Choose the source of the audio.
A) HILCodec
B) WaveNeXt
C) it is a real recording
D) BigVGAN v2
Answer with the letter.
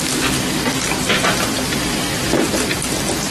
D